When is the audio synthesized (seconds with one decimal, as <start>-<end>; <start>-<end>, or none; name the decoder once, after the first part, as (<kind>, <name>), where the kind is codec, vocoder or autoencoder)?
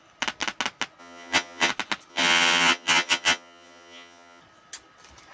1.0-1.7 (vocoder, HiFi-GAN); 2.1-4.4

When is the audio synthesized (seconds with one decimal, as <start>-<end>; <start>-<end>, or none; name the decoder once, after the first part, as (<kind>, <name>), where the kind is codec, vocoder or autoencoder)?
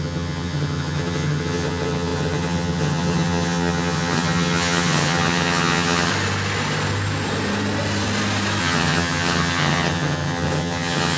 0.0-6.1 (vocoder, HiFi-GAN); 8.6-11.2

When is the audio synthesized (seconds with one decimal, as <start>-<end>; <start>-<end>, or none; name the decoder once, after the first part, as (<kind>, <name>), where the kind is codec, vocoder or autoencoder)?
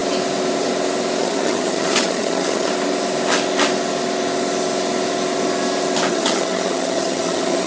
1.2-2.7 (vocoder, HiFi-GAN); 6.1-7.7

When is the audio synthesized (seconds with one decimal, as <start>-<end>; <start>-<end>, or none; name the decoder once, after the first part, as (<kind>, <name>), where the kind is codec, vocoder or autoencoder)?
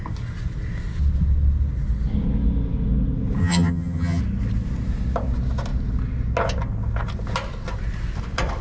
3.4-4.2 (vocoder, HiFi-GAN)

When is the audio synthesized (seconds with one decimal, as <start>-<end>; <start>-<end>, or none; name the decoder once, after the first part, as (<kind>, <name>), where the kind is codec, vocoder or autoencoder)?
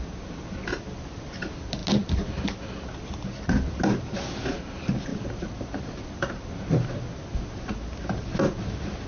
none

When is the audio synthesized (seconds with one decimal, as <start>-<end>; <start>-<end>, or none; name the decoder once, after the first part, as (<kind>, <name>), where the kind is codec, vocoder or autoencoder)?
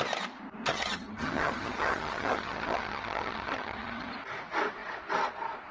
0.7-4.1 (vocoder, HiFi-GAN)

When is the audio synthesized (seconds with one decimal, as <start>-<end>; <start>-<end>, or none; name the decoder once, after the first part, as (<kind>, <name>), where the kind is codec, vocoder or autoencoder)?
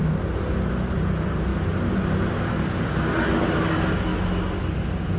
none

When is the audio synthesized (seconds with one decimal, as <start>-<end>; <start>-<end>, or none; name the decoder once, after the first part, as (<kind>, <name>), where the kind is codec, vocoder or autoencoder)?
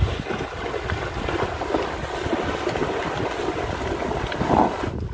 none